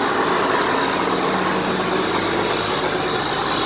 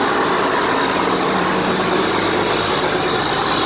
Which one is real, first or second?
first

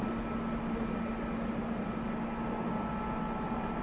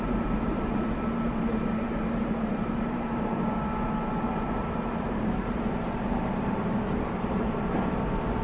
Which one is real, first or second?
first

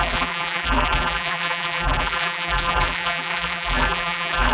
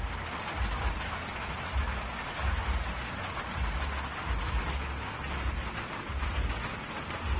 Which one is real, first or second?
second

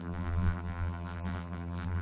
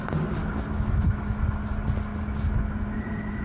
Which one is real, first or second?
second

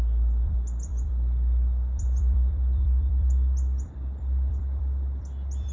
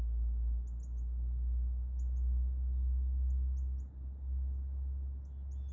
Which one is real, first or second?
second